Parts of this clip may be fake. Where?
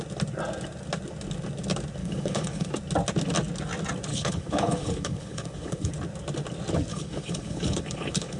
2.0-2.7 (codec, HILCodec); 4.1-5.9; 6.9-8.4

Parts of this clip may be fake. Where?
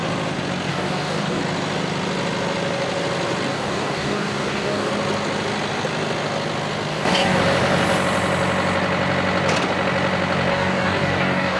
0.7-1.4 (codec, DAC); 3.5-4.9; 6.9-7.4; 10.5-11.6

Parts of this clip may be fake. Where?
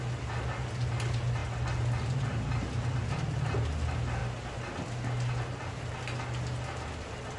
0.0-4.2 (vocoder, BigVGAN v2)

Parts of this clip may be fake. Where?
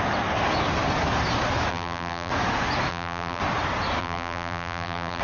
1.7-2.3 (vocoder, BigVGAN v2); 2.9-3.4; 4.0-5.2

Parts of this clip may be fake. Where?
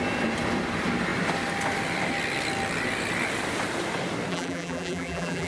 4.3-5.5 (vocoder, BigVGAN v2)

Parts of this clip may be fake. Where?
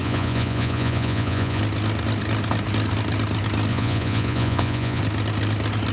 0.0-1.6 (vocoder, Vocos); 3.7-5.0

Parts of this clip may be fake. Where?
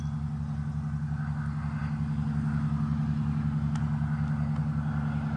none